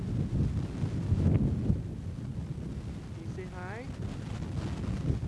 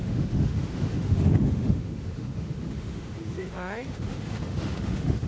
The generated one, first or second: second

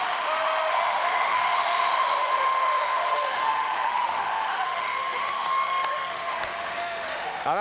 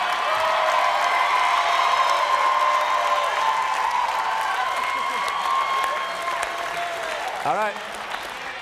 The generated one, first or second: first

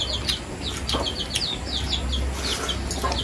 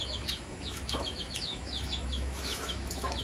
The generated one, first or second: second